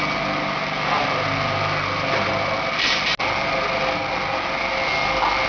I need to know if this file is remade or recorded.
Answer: recorded